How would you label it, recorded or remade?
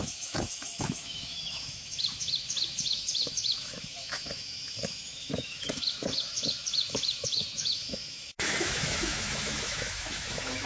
remade